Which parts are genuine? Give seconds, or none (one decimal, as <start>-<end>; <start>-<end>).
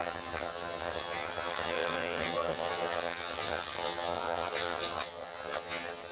none